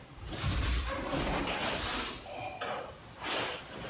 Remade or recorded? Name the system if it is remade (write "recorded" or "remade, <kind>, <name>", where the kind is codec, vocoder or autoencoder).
remade, vocoder, BigVGAN v2